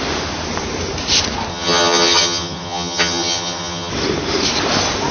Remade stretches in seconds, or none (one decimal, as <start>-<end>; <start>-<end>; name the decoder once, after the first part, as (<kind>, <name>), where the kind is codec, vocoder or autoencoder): 1.5-3.9 (vocoder, HiFi-GAN)